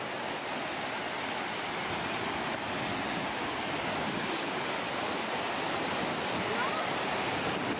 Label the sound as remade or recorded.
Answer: recorded